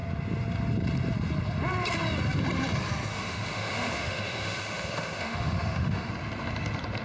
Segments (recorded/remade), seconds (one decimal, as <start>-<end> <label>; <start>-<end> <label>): 0.0-3.1 recorded; 3.1-6.1 remade; 6.1-7.0 recorded